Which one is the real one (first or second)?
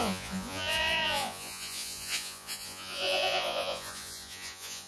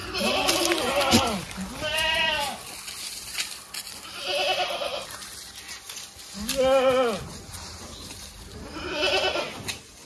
second